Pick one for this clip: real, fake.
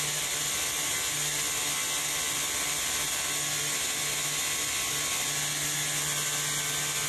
real